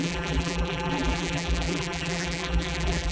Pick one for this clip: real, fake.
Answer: fake